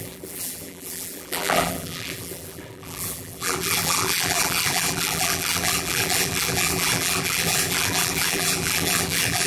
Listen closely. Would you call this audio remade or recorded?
remade